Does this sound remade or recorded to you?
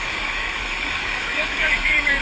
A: remade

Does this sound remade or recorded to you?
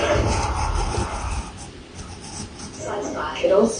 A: recorded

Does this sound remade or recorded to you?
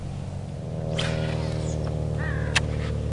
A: recorded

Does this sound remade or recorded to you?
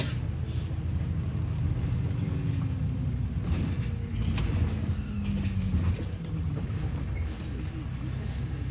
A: recorded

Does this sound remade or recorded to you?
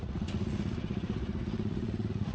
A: remade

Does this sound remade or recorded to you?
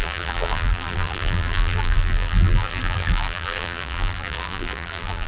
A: remade